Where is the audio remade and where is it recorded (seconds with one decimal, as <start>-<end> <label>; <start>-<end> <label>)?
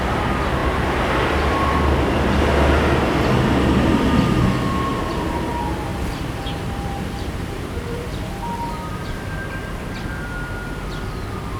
0.0-5.9 recorded; 5.9-8.3 remade; 8.3-8.9 recorded; 8.9-10.0 remade; 10.0-11.6 recorded